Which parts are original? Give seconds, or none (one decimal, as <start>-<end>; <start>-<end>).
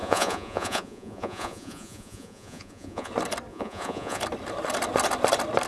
3.1-3.5; 4.2-5.7